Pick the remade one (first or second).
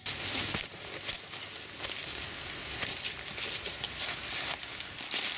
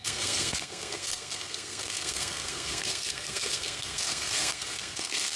second